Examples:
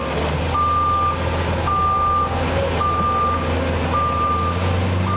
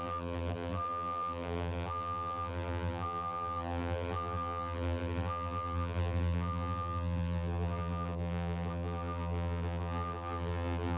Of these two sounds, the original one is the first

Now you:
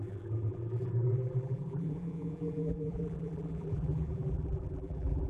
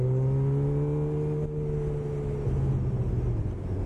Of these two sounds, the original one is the second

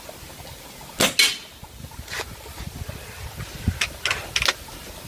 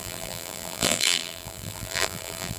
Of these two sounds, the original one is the first